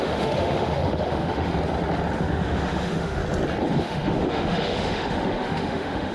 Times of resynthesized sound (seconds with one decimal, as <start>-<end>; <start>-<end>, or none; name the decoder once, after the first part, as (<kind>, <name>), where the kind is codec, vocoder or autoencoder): 0.0-1.5 (autoencoder, DAC-VAE); 2.2-3.2; 3.8-6.1